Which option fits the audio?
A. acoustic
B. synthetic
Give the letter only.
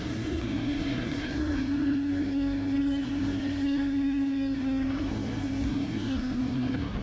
B